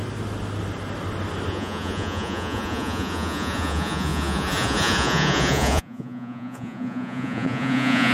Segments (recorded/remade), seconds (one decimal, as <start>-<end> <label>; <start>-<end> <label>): 0.0-1.5 recorded; 1.5-8.1 remade